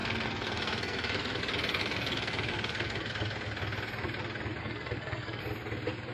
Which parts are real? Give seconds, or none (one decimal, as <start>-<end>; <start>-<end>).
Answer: 1.4-1.8; 3.1-4.6; 5.4-6.1